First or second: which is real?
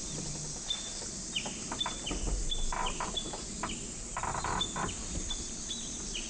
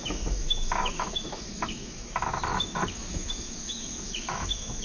first